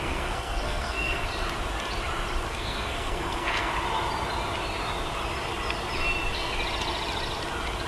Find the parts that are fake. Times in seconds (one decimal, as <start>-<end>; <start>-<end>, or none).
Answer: 0.0-1.3; 2.5-3.7